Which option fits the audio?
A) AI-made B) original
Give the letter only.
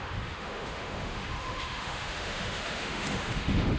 A